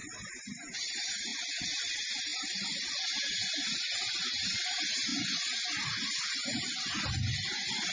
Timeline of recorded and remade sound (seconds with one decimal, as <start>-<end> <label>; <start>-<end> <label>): 0.0-0.5 recorded; 0.5-1.3 remade; 1.3-1.9 recorded; 1.9-7.9 remade